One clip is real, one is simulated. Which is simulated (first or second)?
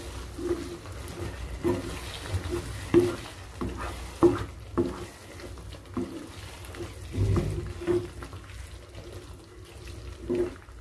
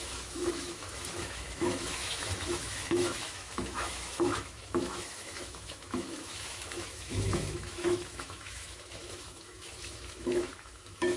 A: second